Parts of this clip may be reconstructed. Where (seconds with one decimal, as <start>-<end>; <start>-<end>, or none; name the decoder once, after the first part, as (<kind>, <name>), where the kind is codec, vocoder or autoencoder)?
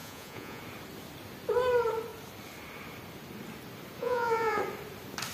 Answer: 0.0-0.6 (vocoder, Vocos); 4.0-4.6